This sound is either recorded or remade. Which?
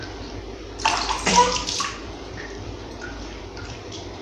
remade